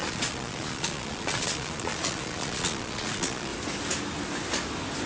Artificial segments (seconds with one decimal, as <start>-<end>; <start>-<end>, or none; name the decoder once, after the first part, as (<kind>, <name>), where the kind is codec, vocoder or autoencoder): 0.0-3.5 (vocoder, Vocos)